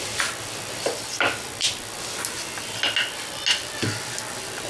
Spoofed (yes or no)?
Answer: no